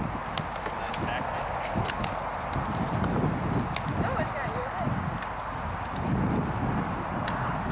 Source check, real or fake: real